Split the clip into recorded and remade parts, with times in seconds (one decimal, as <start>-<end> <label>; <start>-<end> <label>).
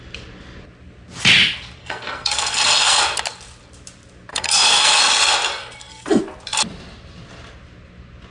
0.0-1.8 recorded; 1.8-3.0 remade; 3.0-4.3 recorded; 4.3-5.0 remade; 5.0-5.6 recorded; 5.6-6.2 remade; 6.2-8.3 recorded